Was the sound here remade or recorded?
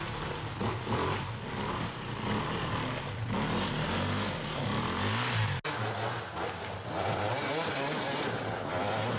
recorded